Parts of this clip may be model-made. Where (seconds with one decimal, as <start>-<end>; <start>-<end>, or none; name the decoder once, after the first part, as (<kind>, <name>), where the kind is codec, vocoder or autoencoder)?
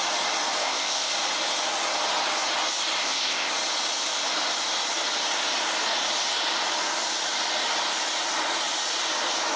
0.6-1.1 (codec, ZipCodec); 3.0-3.5